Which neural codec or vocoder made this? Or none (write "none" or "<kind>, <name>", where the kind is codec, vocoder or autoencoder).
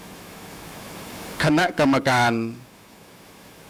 autoencoder, DAC-VAE